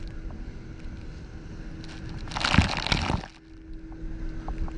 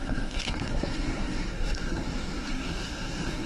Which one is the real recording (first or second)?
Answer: first